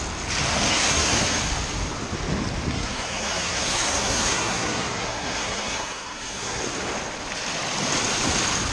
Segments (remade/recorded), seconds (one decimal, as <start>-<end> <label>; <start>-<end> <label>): 0.0-0.7 recorded; 0.7-1.4 remade; 1.4-2.7 recorded; 2.7-6.6 remade; 6.6-8.7 recorded